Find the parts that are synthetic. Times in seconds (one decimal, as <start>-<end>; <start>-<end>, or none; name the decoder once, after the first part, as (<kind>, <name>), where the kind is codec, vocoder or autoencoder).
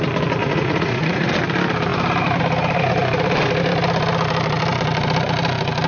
0.4-1.3 (vocoder, Vocos)